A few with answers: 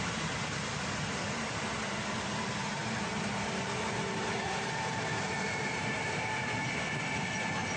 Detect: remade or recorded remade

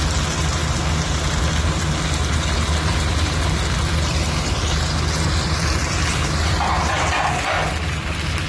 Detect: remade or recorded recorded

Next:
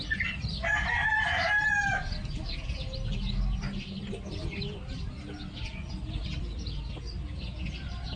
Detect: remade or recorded recorded